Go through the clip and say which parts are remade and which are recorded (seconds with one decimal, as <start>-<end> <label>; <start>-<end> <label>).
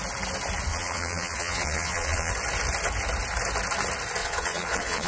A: 0.0-0.7 recorded; 0.7-2.3 remade; 2.3-4.2 recorded; 4.2-5.1 remade